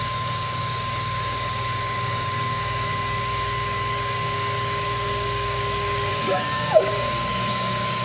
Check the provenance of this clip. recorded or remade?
remade